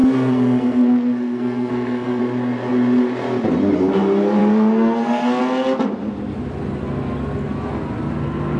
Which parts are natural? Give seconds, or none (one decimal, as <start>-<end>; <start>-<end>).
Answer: 2.2-4.4; 5.4-8.6